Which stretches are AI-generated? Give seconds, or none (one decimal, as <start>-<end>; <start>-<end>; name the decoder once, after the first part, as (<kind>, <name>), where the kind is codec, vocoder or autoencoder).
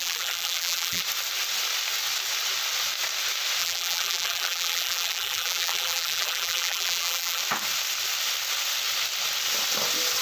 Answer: 0.0-1.0 (vocoder, BigVGAN v2); 3.6-7.4